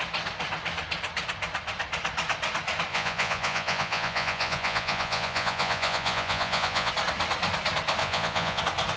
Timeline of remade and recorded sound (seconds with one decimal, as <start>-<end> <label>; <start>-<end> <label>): 0.0-2.9 recorded; 2.9-6.9 remade; 6.9-8.0 recorded; 8.0-8.6 remade; 8.6-9.0 recorded